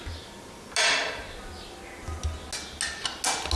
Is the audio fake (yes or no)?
no